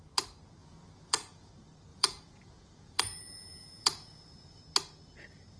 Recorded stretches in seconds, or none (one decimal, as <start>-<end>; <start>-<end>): 0.0-0.6; 1.5-1.9; 4.6-5.6